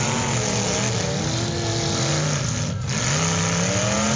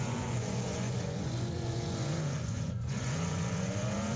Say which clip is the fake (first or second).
second